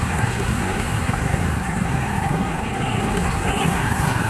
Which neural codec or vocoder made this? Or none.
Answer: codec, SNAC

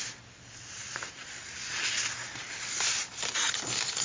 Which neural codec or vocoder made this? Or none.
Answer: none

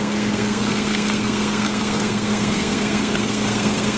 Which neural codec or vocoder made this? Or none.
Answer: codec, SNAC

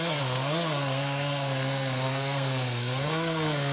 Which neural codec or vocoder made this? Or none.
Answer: codec, SNAC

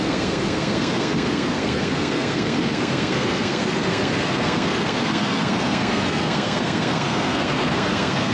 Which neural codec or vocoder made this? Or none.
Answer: codec, SNAC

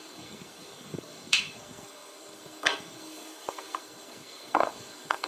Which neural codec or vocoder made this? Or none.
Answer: codec, SNAC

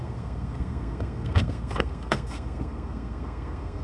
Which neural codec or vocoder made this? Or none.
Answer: codec, SNAC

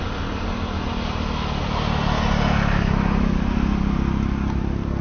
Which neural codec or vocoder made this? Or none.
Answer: none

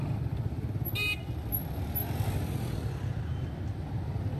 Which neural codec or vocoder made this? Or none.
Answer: none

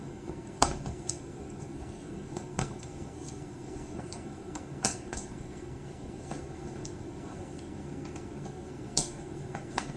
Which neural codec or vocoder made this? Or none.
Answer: codec, SNAC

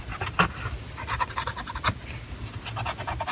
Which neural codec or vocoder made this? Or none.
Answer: none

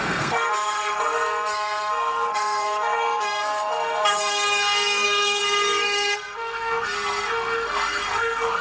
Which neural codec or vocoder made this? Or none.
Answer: codec, SNAC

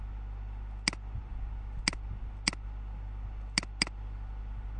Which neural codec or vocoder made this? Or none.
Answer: none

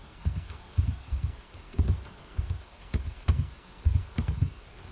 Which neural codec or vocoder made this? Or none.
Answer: codec, SNAC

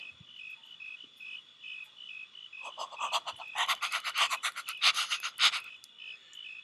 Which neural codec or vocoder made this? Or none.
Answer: none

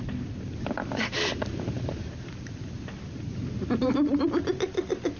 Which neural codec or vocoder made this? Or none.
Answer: none